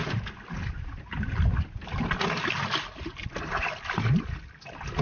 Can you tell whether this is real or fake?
real